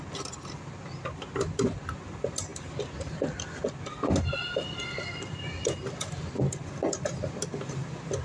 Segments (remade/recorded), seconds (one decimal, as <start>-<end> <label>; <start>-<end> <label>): 0.0-8.2 recorded